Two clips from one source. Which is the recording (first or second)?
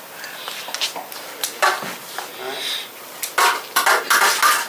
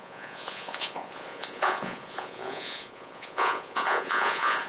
first